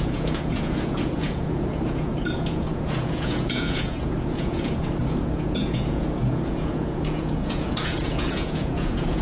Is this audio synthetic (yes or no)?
yes